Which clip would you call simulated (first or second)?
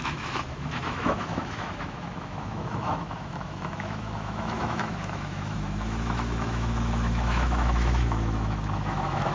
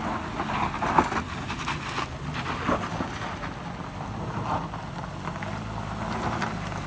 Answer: first